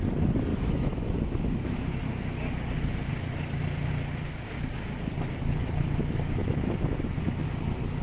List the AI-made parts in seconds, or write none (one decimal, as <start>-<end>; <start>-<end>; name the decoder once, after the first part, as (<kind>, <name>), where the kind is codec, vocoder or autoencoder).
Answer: 0.5-2.0 (autoencoder, DAC-VAE)